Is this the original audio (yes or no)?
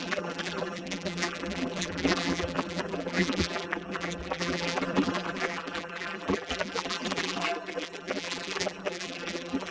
no